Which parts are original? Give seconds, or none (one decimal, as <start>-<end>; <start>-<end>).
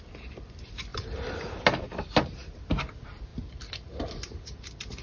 0.0-5.0